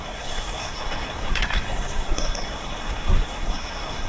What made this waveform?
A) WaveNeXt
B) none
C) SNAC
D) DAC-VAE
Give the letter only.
C